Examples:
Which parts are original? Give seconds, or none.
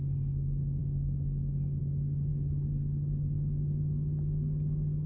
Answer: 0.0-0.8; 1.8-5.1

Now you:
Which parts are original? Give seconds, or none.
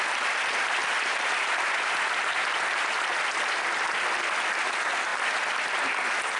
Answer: 0.0-6.4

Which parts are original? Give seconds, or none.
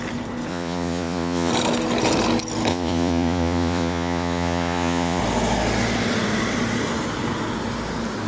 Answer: 0.0-0.5; 1.5-2.7; 5.2-8.3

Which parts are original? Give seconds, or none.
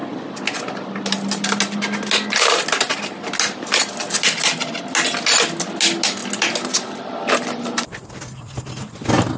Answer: 0.0-9.4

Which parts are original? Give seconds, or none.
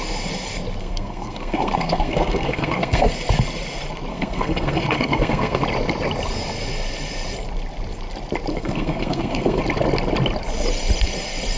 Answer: 0.0-0.8; 3.1-4.1; 5.6-8.5; 9.6-11.6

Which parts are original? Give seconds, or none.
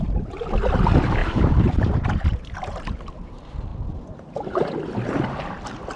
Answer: 0.0-1.2; 2.9-6.0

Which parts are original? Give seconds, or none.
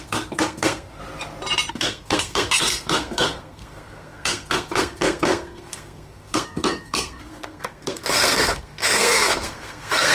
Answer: 1.0-1.7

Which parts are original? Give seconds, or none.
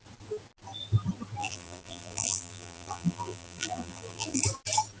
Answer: 0.0-1.4; 4.4-5.0